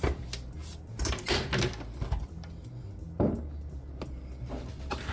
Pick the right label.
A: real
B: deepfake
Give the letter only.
A